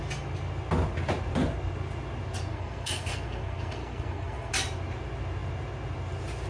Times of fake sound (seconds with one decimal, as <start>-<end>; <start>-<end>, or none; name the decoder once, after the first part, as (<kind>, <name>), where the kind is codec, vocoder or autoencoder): 2.5-4.5 (codec, SNAC)

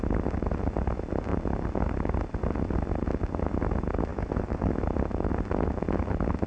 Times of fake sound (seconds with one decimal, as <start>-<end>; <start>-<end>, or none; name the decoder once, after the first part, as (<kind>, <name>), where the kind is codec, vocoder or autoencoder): 4.1-4.7 (autoencoder, DAC-VAE)